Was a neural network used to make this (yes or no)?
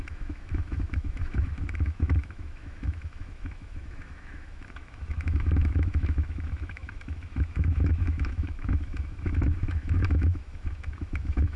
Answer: yes